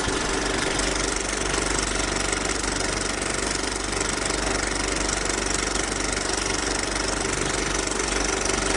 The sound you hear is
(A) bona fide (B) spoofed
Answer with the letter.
A